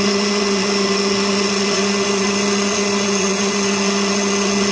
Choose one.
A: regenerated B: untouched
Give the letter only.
A